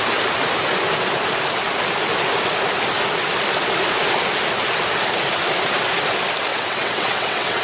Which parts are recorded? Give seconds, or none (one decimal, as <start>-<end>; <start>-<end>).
0.0-6.5